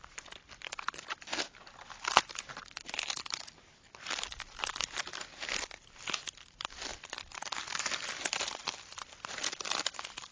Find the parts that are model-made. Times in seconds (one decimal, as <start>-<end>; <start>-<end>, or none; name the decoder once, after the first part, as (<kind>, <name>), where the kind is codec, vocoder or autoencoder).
none